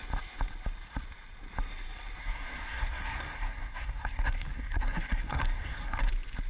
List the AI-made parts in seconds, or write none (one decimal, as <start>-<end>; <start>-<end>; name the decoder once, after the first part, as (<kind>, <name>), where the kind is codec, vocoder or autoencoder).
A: 2.2-6.1 (codec, SNAC)